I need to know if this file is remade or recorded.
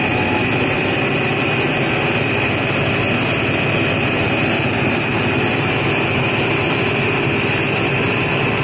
remade